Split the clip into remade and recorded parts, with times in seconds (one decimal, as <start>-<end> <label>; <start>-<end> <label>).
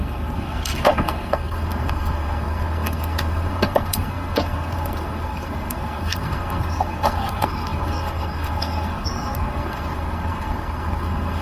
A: 0.0-11.4 remade